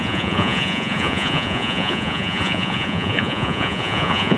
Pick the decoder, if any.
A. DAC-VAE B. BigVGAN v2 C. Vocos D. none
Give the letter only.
C